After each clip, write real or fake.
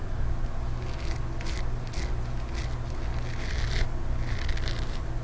real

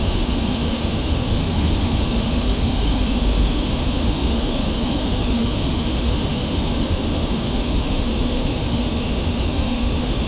fake